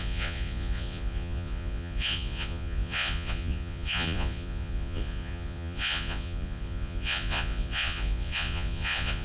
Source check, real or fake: fake